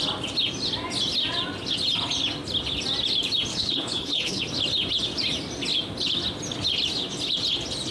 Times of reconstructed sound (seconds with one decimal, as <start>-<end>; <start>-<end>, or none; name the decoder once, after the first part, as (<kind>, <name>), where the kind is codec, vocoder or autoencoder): 3.5-4.4 (codec, HILCodec)